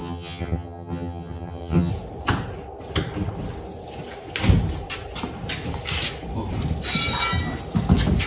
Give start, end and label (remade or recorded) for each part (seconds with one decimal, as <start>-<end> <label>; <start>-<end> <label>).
0.0-1.9 remade; 1.9-8.3 recorded